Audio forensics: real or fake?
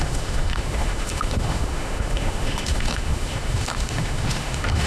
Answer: fake